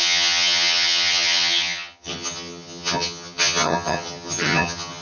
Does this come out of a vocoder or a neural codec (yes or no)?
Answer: yes